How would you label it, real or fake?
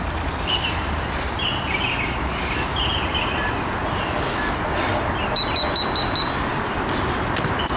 real